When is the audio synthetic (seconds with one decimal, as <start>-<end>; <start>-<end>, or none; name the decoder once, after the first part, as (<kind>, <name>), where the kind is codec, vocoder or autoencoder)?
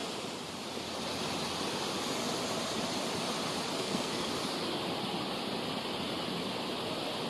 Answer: 3.8-4.3 (codec, SNAC)